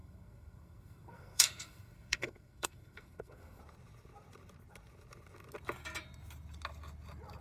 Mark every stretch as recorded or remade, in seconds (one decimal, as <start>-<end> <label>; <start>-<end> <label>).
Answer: 0.0-3.6 remade; 3.6-7.4 recorded

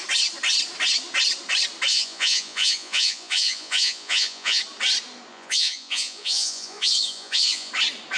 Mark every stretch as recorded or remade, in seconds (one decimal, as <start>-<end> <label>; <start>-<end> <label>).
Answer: 0.0-1.9 recorded; 1.9-4.6 remade; 4.6-5.3 recorded; 5.3-7.7 remade; 7.7-8.2 recorded